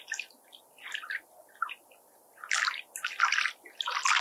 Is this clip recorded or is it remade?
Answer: recorded